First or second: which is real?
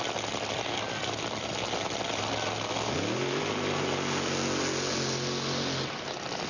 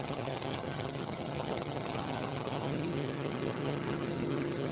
first